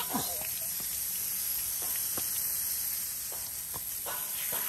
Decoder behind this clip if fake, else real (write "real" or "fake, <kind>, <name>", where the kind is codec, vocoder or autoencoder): real